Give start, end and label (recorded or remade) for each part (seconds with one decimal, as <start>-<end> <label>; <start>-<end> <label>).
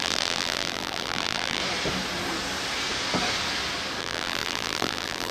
0.0-1.6 remade; 1.6-4.0 recorded; 4.0-5.3 remade